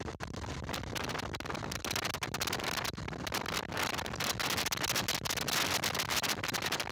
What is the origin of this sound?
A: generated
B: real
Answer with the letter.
B